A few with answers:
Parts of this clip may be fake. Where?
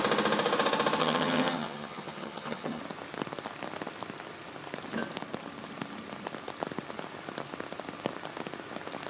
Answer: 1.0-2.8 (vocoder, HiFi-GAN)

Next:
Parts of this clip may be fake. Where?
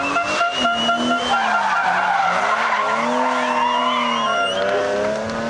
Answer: none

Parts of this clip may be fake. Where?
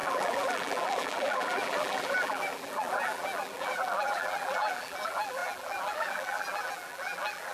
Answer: 0.0-7.5 (vocoder, BigVGAN v2)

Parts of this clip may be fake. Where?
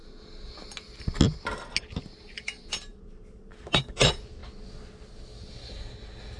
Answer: 2.9-3.8 (vocoder, BigVGAN v2)